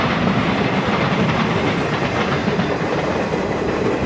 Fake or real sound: fake